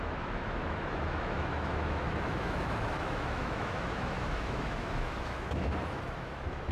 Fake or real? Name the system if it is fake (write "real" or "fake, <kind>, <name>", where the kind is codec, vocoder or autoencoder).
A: fake, autoencoder, DAC-VAE